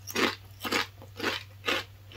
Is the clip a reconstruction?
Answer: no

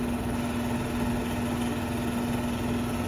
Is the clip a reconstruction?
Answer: no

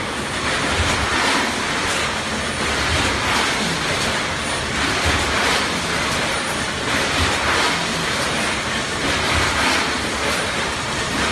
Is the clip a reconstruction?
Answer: no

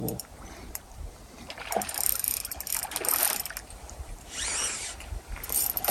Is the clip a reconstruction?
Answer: yes